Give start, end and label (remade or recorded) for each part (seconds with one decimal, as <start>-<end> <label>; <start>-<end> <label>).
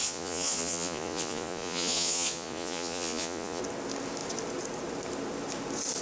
0.0-3.6 remade; 3.6-6.0 recorded